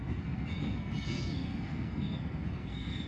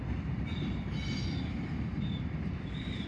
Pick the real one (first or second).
second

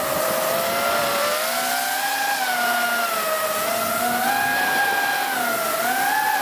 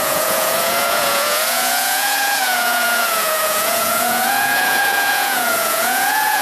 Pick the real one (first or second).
first